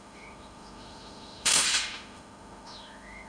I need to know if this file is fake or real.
fake